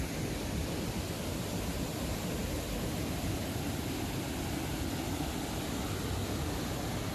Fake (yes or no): no